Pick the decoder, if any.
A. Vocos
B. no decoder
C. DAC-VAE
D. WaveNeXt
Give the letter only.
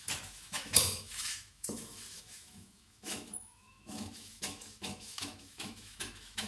C